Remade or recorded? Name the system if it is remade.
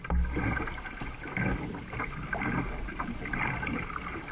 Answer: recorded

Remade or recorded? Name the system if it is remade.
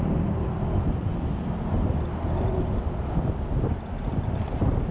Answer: recorded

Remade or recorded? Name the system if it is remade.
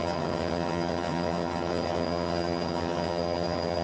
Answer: remade, vocoder, HiFi-GAN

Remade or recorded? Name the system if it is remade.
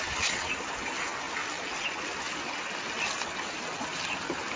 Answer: recorded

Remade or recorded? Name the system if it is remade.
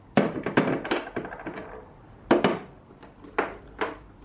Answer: recorded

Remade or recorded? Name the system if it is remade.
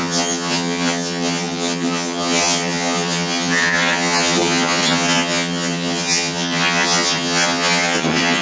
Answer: remade, vocoder, HiFi-GAN